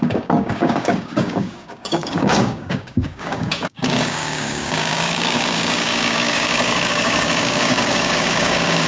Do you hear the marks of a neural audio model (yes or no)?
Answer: yes